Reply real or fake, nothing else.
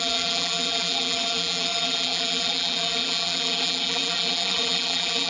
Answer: fake